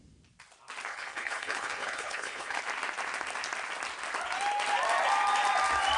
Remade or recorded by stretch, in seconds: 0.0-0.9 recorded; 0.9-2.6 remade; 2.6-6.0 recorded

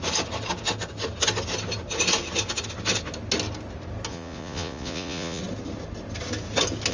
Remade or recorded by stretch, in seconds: 0.0-4.1 recorded; 4.1-5.4 remade; 5.4-6.9 recorded

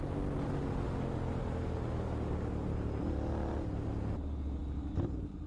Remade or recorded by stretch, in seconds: 0.0-5.5 recorded

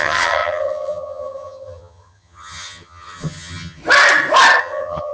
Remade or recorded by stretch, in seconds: 0.0-3.8 remade; 3.8-4.6 recorded; 4.6-5.1 remade

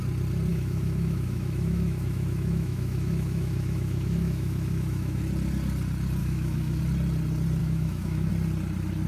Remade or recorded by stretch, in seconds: 0.0-0.5 recorded; 0.5-5.2 remade; 5.2-6.2 recorded; 6.2-6.8 remade; 6.8-7.6 recorded; 7.6-8.3 remade; 8.3-9.1 recorded